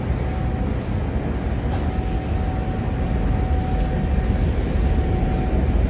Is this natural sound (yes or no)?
yes